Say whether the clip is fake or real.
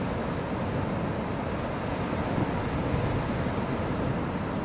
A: real